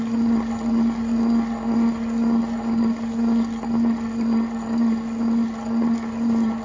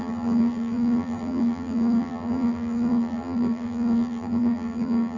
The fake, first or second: second